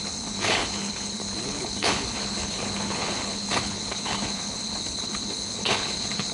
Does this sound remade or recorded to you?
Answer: remade